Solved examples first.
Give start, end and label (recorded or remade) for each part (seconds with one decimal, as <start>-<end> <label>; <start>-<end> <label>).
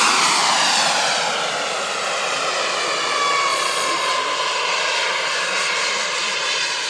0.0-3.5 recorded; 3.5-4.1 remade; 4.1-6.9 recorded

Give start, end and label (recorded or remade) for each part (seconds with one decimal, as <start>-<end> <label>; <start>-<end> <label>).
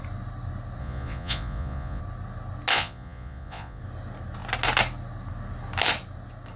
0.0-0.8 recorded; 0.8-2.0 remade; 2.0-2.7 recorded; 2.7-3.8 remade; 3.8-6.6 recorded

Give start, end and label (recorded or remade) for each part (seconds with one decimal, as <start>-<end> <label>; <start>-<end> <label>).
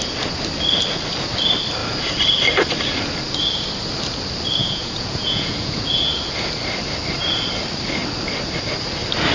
0.0-4.6 recorded; 4.6-6.1 remade; 6.1-9.3 recorded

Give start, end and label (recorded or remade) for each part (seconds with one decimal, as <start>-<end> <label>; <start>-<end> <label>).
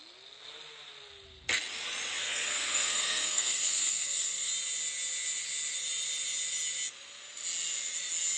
0.0-2.2 recorded; 2.2-4.5 remade; 4.5-8.4 recorded